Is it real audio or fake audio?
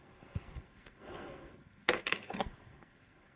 fake